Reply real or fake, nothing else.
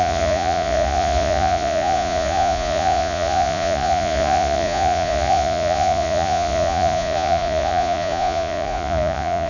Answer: fake